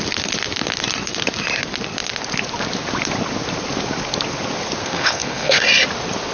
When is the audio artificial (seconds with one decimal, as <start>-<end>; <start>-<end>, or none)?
4.8-5.6